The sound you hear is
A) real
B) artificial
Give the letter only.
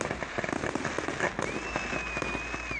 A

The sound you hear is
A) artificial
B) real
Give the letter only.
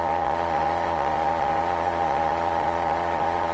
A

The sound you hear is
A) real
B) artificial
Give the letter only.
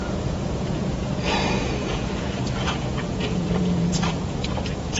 B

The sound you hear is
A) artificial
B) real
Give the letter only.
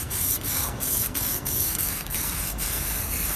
A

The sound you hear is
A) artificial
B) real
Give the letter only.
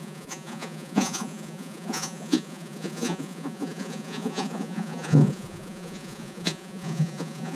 A